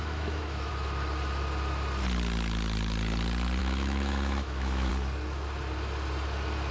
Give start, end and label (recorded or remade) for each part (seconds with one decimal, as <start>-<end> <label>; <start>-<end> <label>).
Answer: 0.0-0.7 remade; 0.7-3.6 recorded; 3.6-4.9 remade; 4.9-6.7 recorded